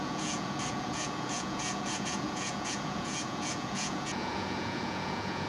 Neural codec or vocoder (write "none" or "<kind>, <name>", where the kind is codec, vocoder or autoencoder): vocoder, Vocos